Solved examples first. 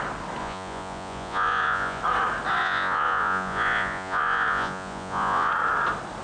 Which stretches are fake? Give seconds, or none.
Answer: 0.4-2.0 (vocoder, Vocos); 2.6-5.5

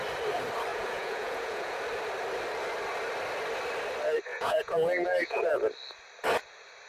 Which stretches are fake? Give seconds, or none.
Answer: 0.7-1.8 (vocoder, Vocos); 4.3-5.5

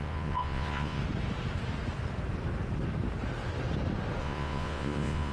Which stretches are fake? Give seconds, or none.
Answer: 0.0-1.0 (vocoder, Vocos); 4.2-5.3

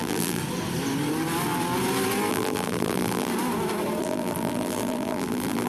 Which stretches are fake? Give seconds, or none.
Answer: 0.0-0.4 (vocoder, BigVGAN v2); 2.3-3.3; 4.0-5.7